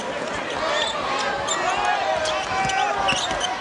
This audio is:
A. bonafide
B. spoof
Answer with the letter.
A